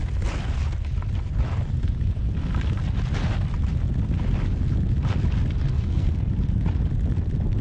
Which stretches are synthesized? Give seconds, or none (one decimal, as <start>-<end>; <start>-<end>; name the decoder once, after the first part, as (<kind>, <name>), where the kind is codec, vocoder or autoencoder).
5.7-6.3 (codec, SNAC)